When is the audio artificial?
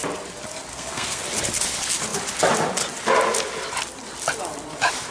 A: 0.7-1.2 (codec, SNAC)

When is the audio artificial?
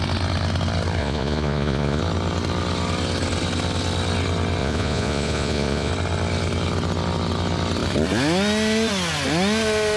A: 1.0-2.0 (vocoder, Vocos); 4.6-5.9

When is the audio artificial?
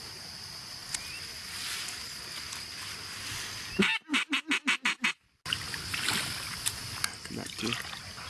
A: none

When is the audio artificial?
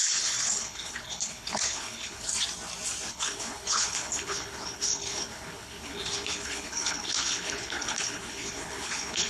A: 0.0-2.3 (codec, HILCodec); 3.1-9.3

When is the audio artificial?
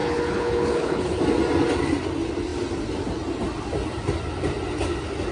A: 0.0-1.2 (codec, HILCodec)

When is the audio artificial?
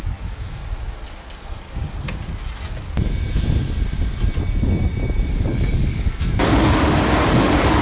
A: 0.0-0.6 (codec, DAC); 5.3-7.8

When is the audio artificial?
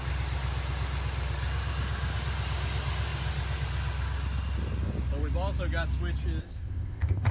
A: 6.4-7.3 (codec, ZipCodec)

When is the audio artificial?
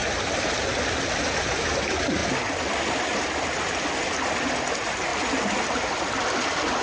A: none